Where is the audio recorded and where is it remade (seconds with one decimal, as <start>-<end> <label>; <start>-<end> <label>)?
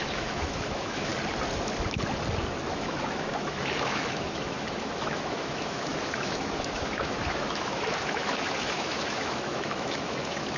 0.0-1.1 remade; 1.1-2.7 recorded; 2.7-10.6 remade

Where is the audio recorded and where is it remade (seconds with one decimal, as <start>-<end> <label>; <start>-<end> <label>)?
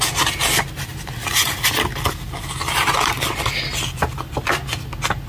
0.0-5.3 recorded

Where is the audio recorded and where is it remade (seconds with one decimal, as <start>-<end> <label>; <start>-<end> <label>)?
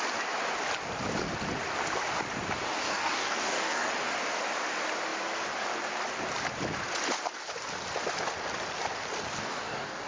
0.0-2.8 recorded; 2.8-3.9 remade; 3.9-9.4 recorded; 9.4-10.1 remade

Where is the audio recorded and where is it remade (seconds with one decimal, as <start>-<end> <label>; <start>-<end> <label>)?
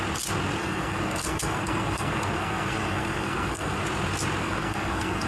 0.0-0.6 recorded; 0.6-3.8 remade; 3.8-4.4 recorded; 4.4-5.3 remade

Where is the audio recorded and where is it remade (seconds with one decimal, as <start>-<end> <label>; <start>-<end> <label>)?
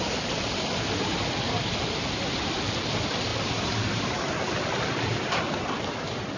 0.0-6.4 recorded